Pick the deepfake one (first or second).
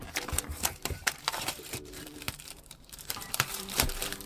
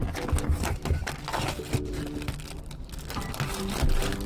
first